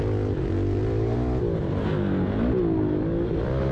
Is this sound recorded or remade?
recorded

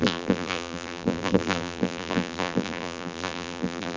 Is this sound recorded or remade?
remade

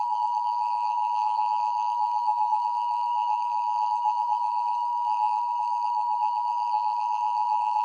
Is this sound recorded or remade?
remade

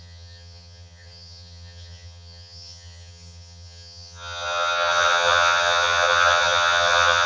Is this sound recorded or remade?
remade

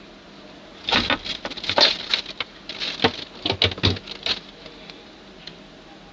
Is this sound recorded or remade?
recorded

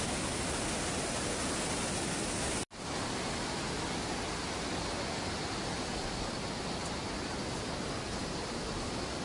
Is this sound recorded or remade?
recorded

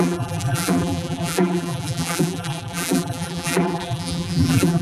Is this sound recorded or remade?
remade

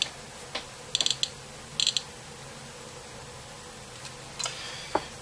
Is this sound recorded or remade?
recorded